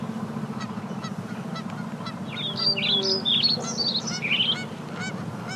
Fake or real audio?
real